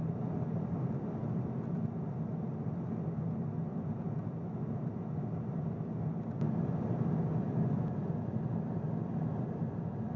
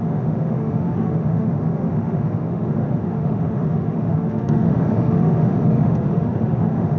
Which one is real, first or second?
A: first